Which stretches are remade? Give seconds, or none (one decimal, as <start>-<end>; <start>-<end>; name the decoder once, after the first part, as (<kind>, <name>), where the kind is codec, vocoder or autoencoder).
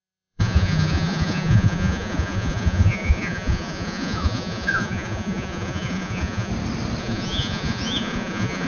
0.0-6.5 (vocoder, Vocos); 7.0-8.7